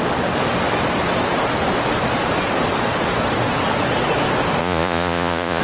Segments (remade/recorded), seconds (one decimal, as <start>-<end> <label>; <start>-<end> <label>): 0.0-4.6 recorded; 4.6-5.6 remade